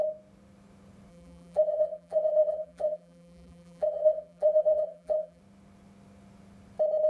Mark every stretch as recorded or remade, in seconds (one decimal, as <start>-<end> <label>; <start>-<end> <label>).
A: 0.0-1.1 recorded; 1.1-5.4 remade; 5.4-7.1 recorded

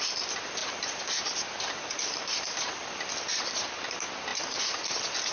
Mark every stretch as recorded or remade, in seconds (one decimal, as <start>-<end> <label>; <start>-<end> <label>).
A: 0.0-0.6 recorded; 0.6-3.1 remade; 3.1-4.3 recorded; 4.3-4.8 remade; 4.8-5.3 recorded

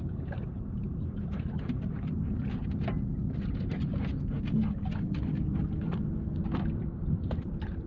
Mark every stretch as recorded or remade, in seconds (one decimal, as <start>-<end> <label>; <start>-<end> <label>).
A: 0.0-2.4 remade; 2.4-7.0 recorded; 7.0-7.9 remade